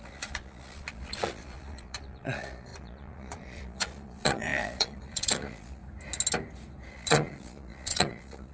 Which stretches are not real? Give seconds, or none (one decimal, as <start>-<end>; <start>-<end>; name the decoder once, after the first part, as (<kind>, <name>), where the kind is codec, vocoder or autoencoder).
0.0-5.8 (vocoder, Vocos); 6.9-8.5